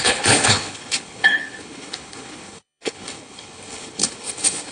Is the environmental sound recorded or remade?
remade